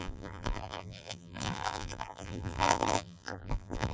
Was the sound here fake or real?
fake